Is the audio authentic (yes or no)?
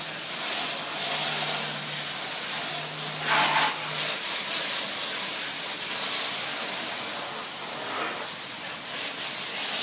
yes